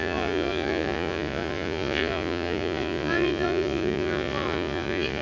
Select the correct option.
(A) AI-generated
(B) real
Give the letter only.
A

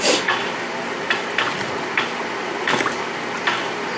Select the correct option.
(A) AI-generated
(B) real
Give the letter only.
B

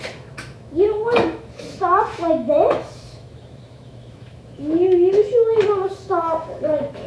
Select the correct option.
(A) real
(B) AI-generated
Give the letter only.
B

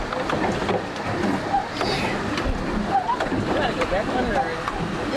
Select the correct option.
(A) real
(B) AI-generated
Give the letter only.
A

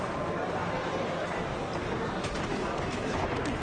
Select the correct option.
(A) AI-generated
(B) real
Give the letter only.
B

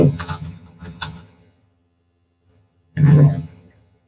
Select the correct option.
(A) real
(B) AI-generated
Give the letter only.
B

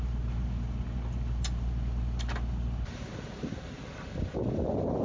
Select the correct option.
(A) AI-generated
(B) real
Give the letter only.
B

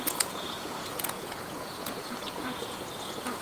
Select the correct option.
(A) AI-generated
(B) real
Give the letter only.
A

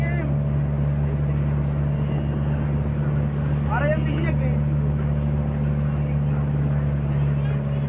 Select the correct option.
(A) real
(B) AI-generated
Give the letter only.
A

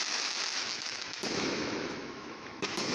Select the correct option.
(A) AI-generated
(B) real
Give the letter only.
A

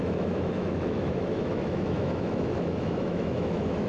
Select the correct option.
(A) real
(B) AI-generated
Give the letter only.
B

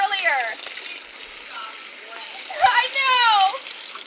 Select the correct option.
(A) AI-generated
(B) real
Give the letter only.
B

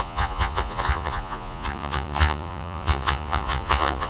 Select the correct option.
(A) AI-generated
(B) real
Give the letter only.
A